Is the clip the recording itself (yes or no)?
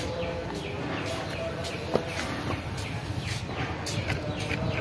yes